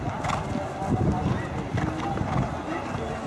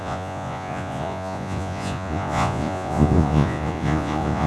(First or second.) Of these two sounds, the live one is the first